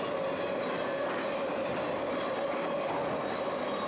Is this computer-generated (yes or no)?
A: no